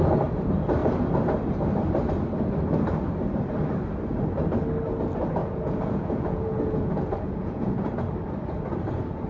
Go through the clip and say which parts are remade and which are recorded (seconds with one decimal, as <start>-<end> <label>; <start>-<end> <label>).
0.0-5.4 recorded; 5.4-7.9 remade; 7.9-9.3 recorded